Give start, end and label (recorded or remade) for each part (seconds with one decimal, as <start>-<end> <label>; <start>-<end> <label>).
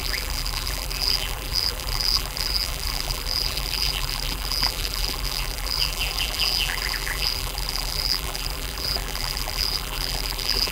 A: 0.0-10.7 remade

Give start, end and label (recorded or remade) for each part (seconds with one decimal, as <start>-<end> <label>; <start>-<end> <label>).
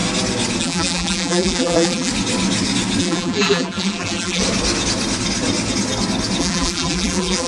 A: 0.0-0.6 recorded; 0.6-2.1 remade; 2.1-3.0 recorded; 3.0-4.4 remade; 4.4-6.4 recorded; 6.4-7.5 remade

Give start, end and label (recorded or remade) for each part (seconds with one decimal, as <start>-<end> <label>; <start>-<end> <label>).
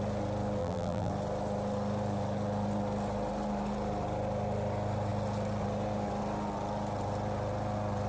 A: 0.0-0.6 recorded; 0.6-1.1 remade; 1.1-8.1 recorded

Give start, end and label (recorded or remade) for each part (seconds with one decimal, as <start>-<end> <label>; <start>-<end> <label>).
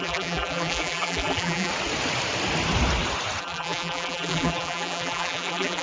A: 0.0-1.7 remade; 1.7-3.4 recorded; 3.4-5.8 remade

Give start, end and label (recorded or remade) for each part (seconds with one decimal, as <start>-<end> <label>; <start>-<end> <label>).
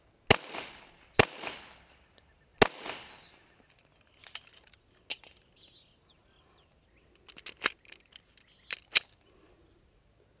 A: 0.0-10.4 recorded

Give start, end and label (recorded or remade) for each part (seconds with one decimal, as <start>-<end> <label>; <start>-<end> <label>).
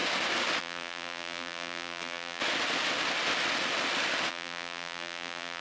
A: 0.0-0.6 recorded; 0.6-2.4 remade; 2.4-4.3 recorded; 4.3-5.6 remade